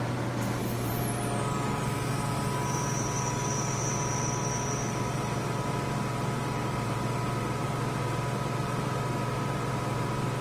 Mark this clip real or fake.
fake